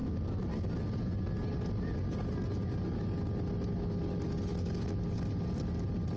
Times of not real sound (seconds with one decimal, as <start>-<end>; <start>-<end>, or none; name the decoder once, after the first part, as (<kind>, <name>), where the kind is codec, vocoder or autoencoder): none

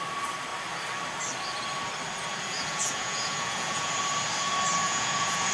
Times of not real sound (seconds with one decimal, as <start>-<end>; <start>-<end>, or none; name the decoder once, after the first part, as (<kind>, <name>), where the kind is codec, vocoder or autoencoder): 2.3-3.9 (vocoder, Vocos); 4.8-5.5

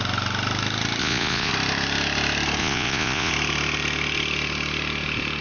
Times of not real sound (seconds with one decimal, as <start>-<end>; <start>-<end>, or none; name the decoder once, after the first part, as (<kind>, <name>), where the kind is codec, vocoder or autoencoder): 1.0-1.5 (vocoder, Vocos); 2.6-3.3

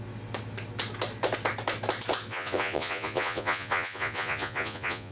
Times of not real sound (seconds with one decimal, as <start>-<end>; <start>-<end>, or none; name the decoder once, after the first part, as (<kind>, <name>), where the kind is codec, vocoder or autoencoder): 2.3-5.1 (vocoder, Vocos)

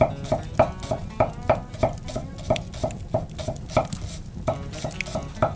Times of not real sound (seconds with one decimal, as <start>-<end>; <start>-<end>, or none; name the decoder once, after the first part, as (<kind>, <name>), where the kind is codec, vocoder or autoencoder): none